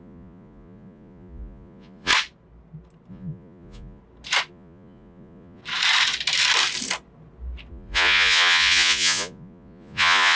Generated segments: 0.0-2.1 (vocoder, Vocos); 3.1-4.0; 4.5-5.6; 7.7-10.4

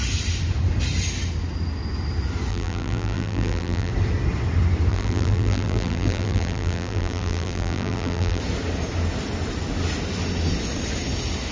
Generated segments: 2.5-3.9 (vocoder, BigVGAN v2); 4.9-8.4

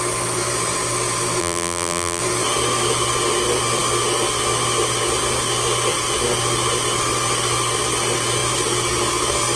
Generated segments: 1.4-2.2 (vocoder, BigVGAN v2)

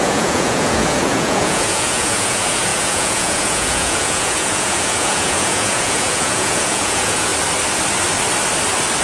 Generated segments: 0.0-7.3 (vocoder, Vocos)

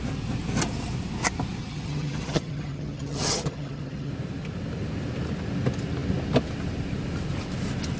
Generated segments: 1.6-4.1 (vocoder, HiFi-GAN)

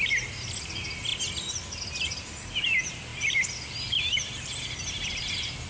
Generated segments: none